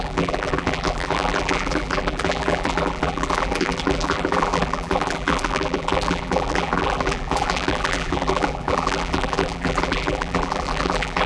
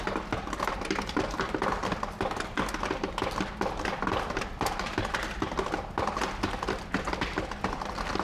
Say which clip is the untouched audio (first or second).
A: second